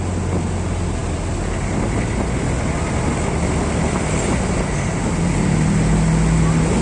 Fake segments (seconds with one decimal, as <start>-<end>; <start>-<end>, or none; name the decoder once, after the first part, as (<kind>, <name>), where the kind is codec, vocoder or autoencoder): none